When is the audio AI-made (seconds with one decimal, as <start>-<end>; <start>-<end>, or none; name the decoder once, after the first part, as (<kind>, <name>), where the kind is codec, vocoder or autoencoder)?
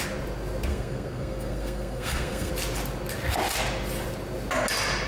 0.7-2.5 (codec, SNAC)